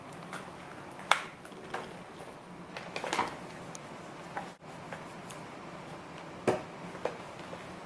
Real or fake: real